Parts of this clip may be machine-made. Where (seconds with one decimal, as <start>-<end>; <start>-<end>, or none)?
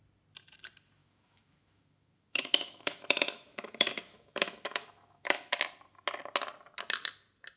1.0-5.6